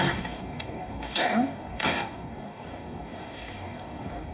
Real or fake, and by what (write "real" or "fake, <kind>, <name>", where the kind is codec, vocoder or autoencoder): fake, codec, DAC